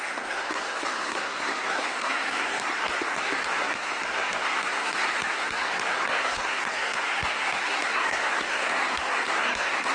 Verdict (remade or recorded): remade